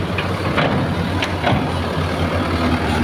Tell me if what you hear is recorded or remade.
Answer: recorded